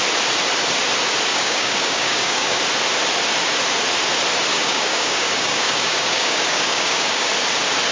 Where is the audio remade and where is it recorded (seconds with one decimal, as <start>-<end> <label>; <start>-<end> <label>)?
0.0-1.3 recorded; 1.3-2.6 remade; 2.6-4.5 recorded; 4.5-7.3 remade; 7.3-7.9 recorded